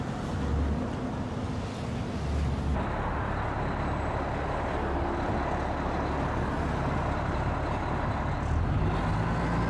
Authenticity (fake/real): real